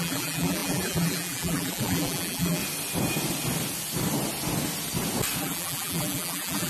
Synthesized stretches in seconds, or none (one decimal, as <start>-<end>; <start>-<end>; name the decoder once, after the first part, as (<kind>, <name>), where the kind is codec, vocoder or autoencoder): 0.0-2.6 (vocoder, BigVGAN v2); 5.4-6.7